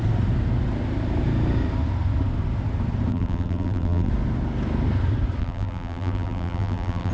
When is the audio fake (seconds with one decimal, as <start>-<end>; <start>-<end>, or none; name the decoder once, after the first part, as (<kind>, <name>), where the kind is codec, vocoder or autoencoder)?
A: 3.1-4.1 (vocoder, BigVGAN v2); 5.4-7.1